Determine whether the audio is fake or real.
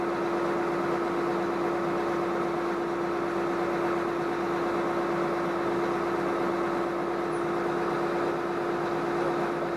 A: real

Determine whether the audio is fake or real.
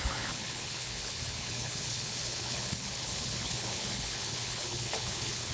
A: fake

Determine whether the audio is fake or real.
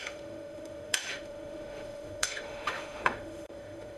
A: fake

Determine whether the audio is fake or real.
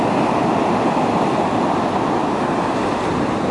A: real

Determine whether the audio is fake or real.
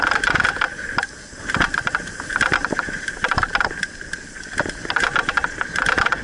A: real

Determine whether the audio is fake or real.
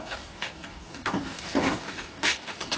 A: fake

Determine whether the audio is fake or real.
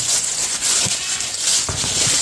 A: fake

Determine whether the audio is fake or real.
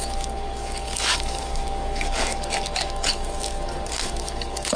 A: fake